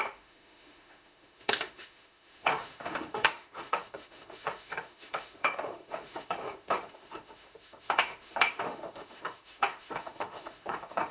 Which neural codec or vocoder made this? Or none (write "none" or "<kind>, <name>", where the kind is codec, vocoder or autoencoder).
autoencoder, DAC-VAE